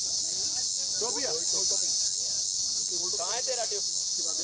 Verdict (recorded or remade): recorded